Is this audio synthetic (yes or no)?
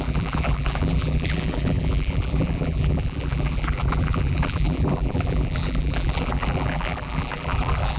yes